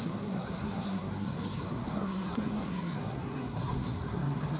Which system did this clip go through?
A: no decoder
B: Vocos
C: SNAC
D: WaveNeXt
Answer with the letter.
C